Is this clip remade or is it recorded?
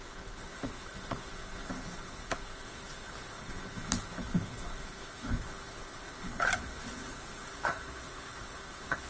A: remade